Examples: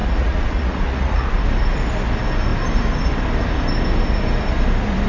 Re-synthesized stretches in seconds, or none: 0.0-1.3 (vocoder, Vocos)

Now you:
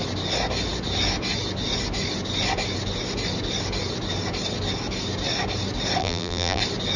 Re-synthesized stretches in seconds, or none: 6.0-6.6 (vocoder, BigVGAN v2)